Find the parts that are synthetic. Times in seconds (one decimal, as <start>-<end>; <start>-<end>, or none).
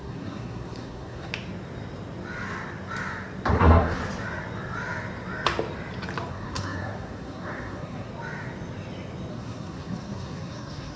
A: 0.0-1.3; 3.5-4.0; 6.3-8.1; 9.3-11.0